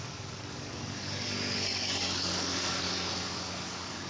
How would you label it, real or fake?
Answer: fake